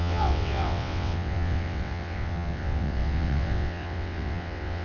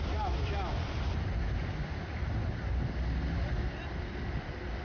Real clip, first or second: second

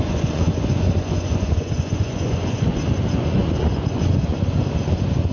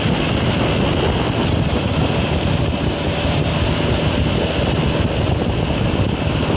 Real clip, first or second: second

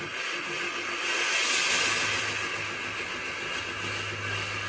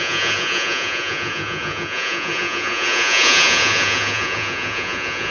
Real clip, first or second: first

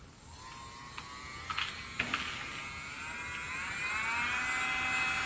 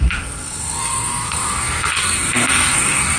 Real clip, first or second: first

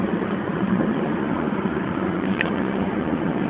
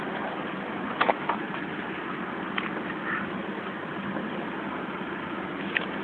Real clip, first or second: second